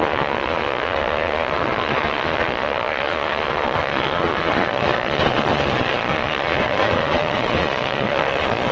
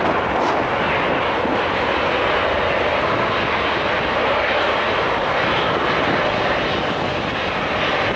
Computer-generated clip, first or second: first